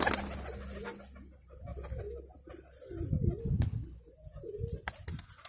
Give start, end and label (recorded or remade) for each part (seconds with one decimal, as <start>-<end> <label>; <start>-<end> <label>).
0.0-3.4 recorded; 3.4-4.0 remade; 4.0-5.5 recorded